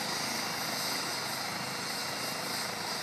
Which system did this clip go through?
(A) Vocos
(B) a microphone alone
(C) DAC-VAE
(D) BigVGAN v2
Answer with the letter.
B